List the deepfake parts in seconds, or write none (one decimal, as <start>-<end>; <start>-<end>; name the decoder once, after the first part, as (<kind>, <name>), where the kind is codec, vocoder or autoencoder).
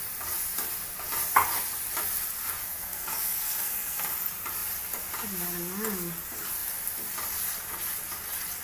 2.6-4.1 (codec, SNAC)